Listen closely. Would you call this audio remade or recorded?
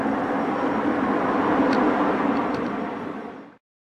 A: recorded